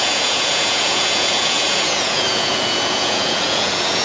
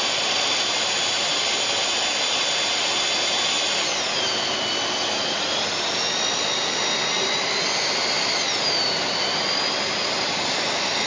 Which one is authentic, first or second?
second